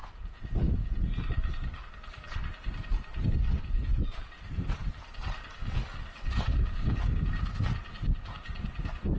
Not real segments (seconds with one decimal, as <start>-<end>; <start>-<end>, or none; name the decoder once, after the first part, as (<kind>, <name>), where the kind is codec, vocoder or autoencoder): 0.0-1.0 (vocoder, Vocos)